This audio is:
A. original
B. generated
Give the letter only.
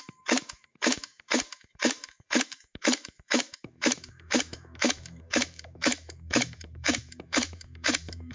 B